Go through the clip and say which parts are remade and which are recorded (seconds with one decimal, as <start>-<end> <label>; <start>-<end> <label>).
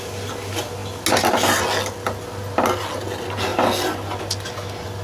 0.0-5.0 recorded